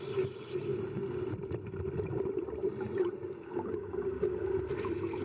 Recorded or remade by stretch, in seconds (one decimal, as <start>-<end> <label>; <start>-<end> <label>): 0.0-5.2 recorded